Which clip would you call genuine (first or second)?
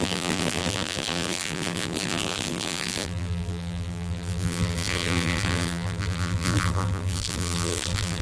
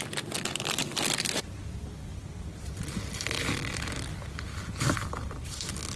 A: second